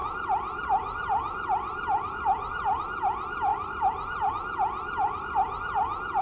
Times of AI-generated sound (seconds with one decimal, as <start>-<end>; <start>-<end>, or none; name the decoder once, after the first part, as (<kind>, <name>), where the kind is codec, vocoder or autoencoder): 0.0-2.8 (vocoder, BigVGAN v2); 3.5-4.3